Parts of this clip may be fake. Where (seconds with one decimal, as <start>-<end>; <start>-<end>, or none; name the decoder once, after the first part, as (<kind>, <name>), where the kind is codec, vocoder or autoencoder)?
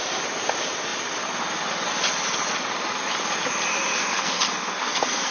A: 4.0-5.3 (codec, SNAC)